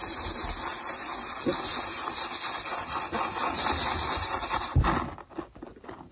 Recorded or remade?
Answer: recorded